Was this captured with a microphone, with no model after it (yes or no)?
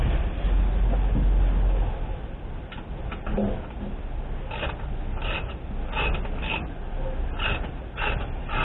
yes